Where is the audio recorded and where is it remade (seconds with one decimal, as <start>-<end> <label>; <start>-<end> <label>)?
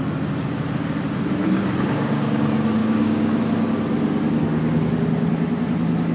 0.0-1.4 recorded; 1.4-2.4 remade; 2.4-2.8 recorded; 2.8-3.4 remade; 3.4-6.1 recorded